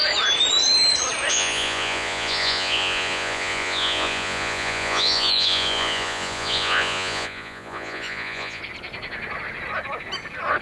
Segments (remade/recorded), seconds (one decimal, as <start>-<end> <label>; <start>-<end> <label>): 0.0-1.3 recorded; 1.3-8.6 remade; 8.6-10.6 recorded

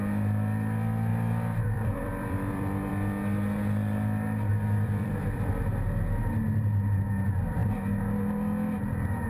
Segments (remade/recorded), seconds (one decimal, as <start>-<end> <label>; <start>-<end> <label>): 0.0-1.1 recorded; 1.1-2.9 remade; 2.9-4.5 recorded; 4.5-5.5 remade; 5.5-9.3 recorded

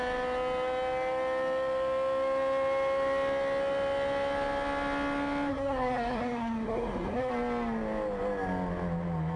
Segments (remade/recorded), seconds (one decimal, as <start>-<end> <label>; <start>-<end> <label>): 0.0-5.5 recorded; 5.5-7.3 remade; 7.3-9.4 recorded

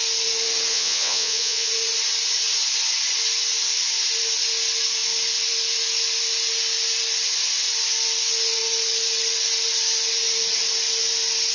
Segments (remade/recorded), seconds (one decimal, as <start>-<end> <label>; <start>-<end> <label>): 0.0-0.7 recorded; 0.7-1.7 remade; 1.7-11.5 recorded

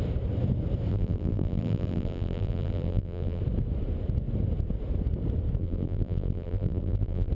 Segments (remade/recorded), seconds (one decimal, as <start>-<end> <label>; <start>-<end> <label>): 0.0-0.9 recorded; 0.9-3.4 remade; 3.4-5.6 recorded; 5.6-7.3 remade

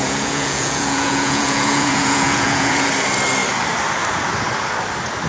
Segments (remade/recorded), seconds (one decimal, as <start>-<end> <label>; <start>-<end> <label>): 0.0-2.9 remade; 2.9-5.3 recorded

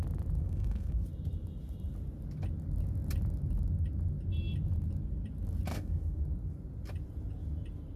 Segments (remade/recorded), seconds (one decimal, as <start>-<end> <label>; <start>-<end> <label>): 0.0-0.4 recorded; 0.4-1.0 remade; 1.0-5.7 recorded; 5.7-6.2 remade; 6.2-8.0 recorded